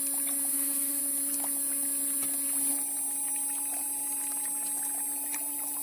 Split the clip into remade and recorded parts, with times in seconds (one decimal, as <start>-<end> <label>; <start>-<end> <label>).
0.0-0.5 recorded; 0.5-1.0 remade; 1.0-5.8 recorded